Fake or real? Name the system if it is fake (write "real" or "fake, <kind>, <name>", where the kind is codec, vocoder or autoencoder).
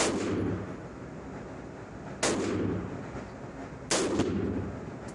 real